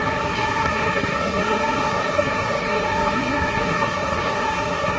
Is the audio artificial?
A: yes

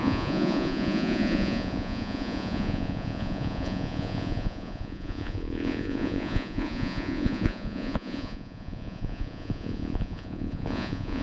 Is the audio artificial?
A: yes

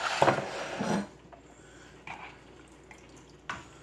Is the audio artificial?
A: no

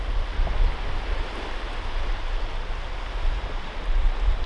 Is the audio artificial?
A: no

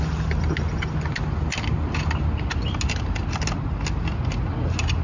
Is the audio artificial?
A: no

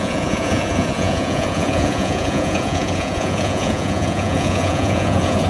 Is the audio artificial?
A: yes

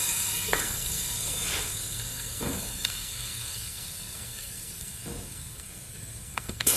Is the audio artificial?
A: yes